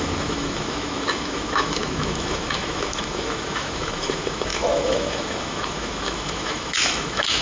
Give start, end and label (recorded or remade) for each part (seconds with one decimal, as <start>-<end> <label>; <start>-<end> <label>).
0.0-7.4 remade